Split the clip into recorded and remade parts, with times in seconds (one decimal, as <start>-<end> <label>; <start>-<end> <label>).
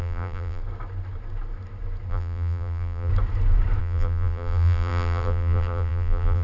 0.0-0.6 remade; 0.6-2.1 recorded; 2.1-3.1 remade; 3.1-3.8 recorded; 3.8-6.4 remade